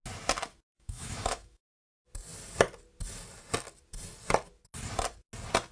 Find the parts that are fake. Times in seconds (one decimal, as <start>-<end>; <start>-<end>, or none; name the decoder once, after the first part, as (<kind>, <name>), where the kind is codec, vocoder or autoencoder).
0.7-1.6 (autoencoder, DAC-VAE)

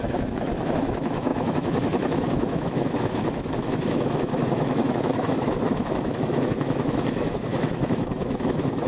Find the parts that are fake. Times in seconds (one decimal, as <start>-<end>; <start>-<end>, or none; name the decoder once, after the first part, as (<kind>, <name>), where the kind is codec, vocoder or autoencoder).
0.0-8.9 (autoencoder, DAC-VAE)

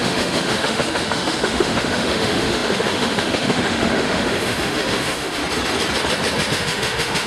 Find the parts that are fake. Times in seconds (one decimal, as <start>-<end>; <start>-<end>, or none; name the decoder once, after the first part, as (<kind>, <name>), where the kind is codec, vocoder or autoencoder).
0.0-5.4 (autoencoder, DAC-VAE); 6.5-7.3

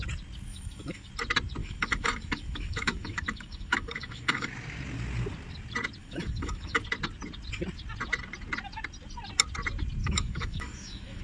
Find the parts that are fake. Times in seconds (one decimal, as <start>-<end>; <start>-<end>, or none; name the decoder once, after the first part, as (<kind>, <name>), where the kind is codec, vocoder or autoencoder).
0.5-1.1 (autoencoder, DAC-VAE); 1.6-4.5; 6.0-6.8; 10.0-11.2

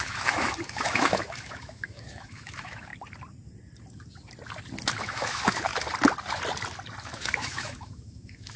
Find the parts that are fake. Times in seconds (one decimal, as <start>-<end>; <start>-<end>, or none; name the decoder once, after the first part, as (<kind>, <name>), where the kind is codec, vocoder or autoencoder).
0.0-2.9 (autoencoder, DAC-VAE); 5.0-5.7; 7.0-8.6

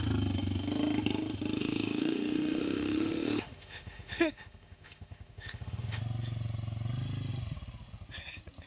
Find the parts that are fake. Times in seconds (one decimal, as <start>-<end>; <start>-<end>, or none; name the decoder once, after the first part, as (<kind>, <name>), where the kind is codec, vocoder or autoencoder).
1.6-6.0 (autoencoder, DAC-VAE)

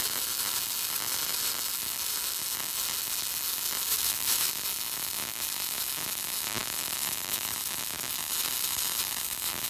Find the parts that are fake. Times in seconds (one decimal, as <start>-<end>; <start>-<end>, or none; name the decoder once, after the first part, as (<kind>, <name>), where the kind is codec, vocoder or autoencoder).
3.9-4.5 (autoencoder, DAC-VAE); 6.6-7.5

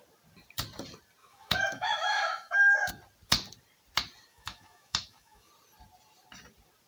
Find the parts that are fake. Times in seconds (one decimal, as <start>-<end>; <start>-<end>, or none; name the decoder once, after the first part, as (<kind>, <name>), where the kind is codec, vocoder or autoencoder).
1.2-2.9 (autoencoder, DAC-VAE); 4.3-5.5